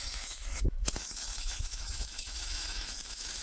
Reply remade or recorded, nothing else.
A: remade